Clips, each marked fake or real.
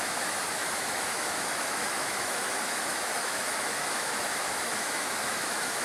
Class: fake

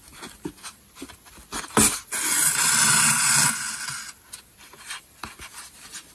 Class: real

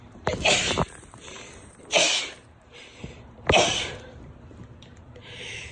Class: fake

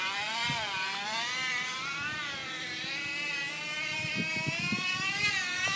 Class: fake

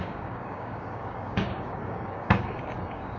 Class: fake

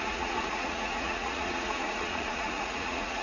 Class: fake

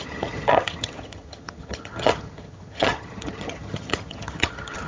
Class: fake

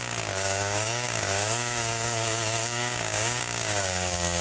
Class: fake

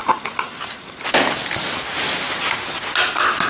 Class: real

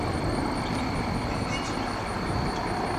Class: real